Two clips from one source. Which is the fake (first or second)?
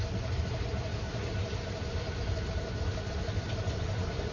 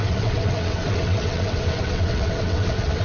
second